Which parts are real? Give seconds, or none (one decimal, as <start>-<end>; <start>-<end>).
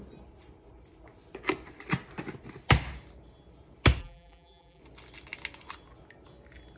0.0-4.0; 4.8-6.8